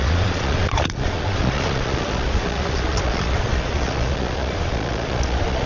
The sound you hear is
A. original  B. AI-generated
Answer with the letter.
B